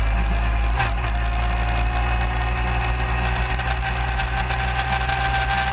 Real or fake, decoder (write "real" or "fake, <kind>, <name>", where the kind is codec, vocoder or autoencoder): real